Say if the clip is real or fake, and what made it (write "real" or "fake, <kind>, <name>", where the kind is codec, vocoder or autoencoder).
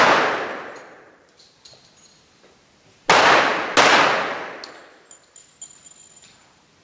real